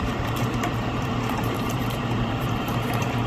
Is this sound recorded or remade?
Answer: remade